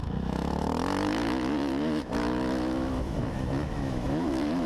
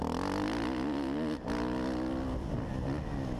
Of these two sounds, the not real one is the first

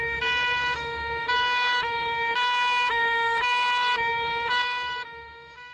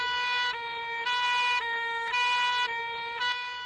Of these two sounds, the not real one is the first